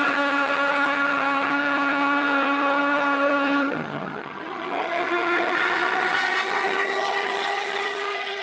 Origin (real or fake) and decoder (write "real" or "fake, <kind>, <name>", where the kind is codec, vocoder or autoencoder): fake, vocoder, HiFi-GAN